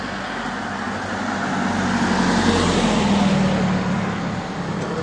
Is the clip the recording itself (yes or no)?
yes